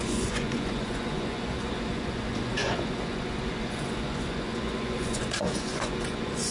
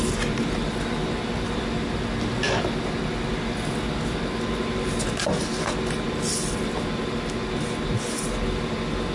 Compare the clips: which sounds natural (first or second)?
second